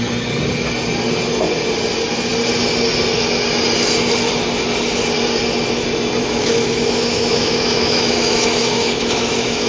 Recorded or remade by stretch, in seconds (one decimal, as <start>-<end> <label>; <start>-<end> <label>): 0.0-6.2 recorded; 6.2-9.7 remade